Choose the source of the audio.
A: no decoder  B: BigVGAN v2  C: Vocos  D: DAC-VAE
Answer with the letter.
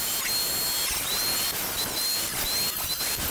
A